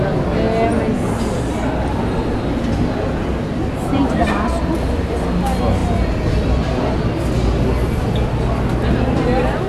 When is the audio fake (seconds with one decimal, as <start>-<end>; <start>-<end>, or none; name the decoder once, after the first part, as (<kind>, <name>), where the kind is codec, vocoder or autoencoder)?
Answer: none